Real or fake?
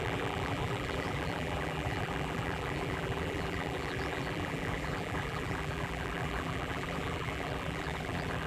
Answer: fake